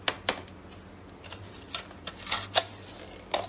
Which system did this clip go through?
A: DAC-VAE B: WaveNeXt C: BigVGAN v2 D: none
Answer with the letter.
D